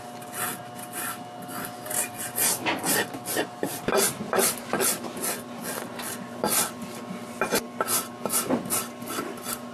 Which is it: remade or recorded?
recorded